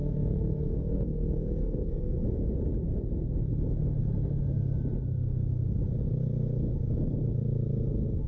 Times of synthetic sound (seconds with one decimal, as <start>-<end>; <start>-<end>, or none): 0.0-2.1